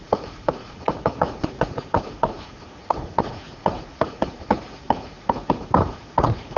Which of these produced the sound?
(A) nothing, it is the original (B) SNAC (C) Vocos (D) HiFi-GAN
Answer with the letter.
C